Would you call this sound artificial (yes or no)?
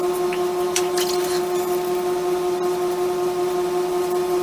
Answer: yes